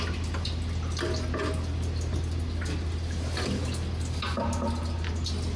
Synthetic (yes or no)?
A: no